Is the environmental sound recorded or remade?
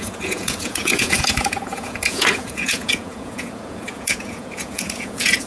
remade